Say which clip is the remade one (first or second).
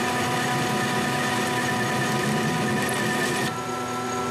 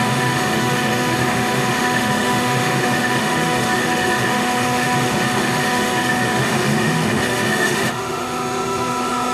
second